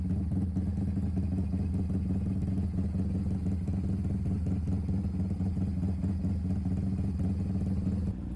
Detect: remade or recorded recorded